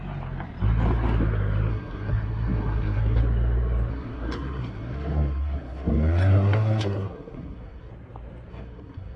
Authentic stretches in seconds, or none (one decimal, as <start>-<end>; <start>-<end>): 0.0-1.7; 3.2-3.9; 7.9-8.5